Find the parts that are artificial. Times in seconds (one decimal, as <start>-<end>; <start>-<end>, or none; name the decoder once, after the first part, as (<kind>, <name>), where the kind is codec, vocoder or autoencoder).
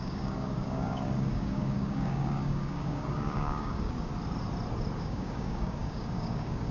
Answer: 0.0-4.1 (codec, DAC); 5.0-6.7